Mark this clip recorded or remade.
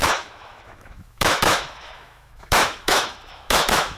remade